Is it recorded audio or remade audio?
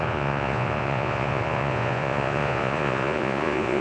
remade